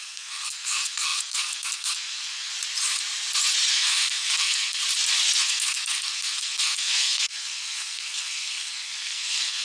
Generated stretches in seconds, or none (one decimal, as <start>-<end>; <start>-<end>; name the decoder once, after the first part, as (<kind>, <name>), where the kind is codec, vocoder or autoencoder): 0.0-2.5 (codec, SNAC); 3.7-4.8; 5.4-9.6